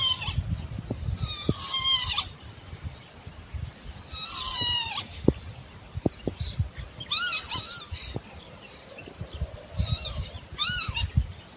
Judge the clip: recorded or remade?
remade